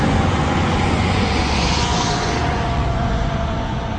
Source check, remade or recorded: remade